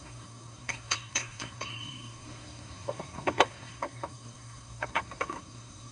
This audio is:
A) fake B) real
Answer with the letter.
A